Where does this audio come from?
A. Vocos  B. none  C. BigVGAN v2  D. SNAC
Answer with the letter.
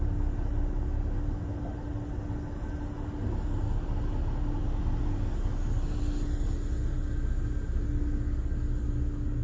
B